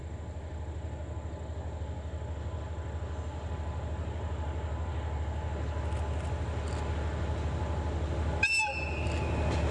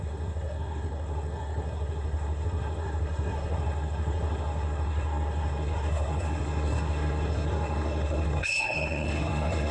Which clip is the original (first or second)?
first